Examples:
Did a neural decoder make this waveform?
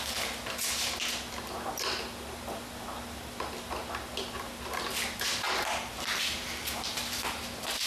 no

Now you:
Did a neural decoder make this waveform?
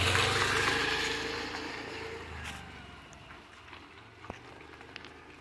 no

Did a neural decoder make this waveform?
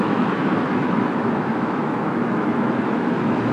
yes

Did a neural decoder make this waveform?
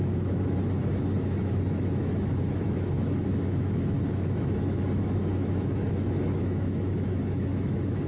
yes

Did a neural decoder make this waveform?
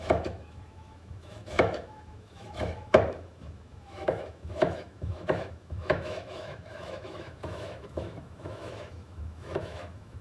yes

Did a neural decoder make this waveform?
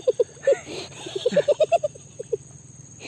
no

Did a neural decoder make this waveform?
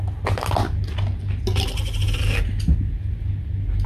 no